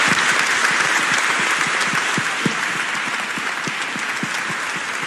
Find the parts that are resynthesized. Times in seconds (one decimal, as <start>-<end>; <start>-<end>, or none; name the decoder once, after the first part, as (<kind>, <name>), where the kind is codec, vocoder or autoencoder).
none